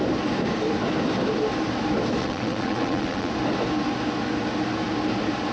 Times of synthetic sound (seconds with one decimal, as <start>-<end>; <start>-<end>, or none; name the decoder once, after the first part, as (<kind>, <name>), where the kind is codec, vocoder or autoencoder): 2.2-3.3 (vocoder, WaveNeXt)